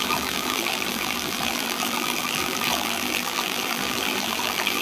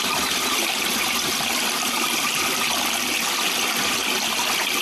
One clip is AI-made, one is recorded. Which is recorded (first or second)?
second